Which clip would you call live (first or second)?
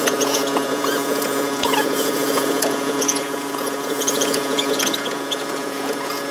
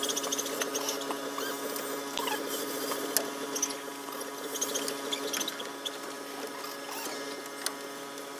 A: second